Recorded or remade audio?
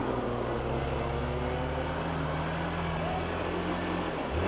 recorded